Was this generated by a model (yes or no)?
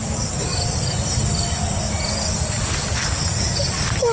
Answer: no